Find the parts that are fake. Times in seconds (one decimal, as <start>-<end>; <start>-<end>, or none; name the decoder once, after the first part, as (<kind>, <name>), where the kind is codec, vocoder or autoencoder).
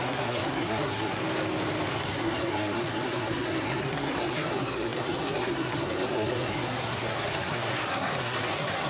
0.0-1.2 (codec, SNAC); 1.9-8.9